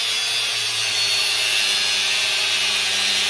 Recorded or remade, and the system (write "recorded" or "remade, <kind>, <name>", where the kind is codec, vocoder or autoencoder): recorded